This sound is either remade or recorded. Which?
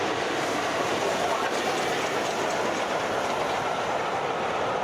recorded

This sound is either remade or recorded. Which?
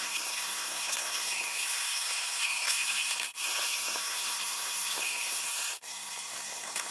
remade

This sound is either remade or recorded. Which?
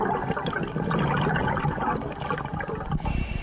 recorded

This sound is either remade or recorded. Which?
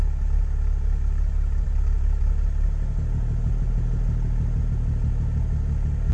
recorded